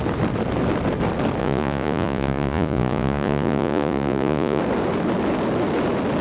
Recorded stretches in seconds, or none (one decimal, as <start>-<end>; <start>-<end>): 0.0-1.4; 4.6-6.2